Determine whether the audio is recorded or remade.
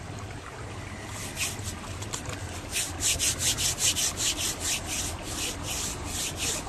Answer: recorded